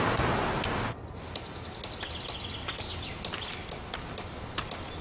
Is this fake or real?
real